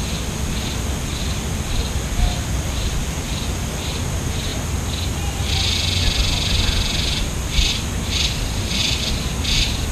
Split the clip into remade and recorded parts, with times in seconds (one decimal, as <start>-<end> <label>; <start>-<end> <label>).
0.0-9.9 recorded